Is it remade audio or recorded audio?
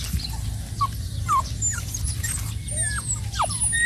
recorded